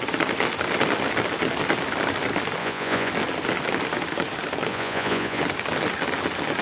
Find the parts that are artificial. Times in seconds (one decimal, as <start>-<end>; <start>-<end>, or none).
2.6-3.1; 4.7-5.4